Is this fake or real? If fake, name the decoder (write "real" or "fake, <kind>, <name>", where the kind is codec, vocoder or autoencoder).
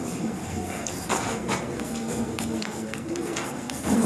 fake, codec, SNAC